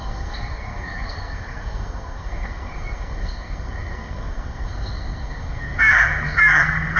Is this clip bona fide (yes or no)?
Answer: no